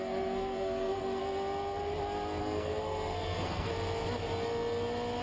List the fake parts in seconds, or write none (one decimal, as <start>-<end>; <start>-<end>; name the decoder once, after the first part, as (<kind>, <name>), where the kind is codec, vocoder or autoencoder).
0.0-1.2 (codec, SNAC); 2.4-3.7